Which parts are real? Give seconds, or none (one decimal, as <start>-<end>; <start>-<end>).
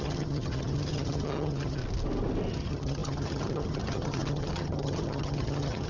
1.8-2.5